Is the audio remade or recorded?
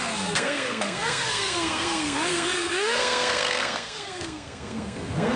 remade